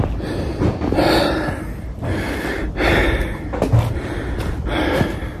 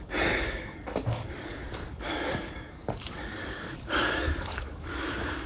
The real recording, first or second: first